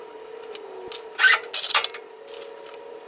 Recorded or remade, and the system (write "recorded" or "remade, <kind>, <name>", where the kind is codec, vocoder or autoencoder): recorded